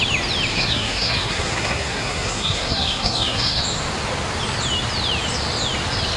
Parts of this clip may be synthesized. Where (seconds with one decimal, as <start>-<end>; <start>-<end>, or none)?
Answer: 0.5-3.6